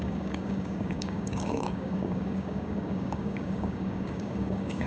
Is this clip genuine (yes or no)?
no